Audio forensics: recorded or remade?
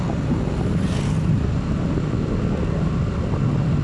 recorded